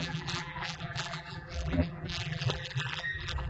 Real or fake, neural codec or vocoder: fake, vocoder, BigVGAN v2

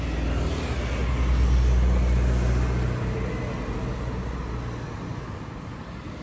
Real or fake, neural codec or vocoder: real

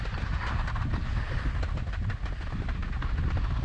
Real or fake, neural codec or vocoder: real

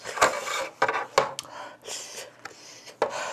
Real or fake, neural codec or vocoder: real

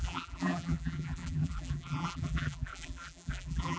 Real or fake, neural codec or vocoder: fake, vocoder, BigVGAN v2